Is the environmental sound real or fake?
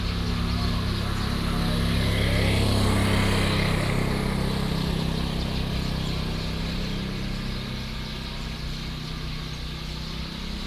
real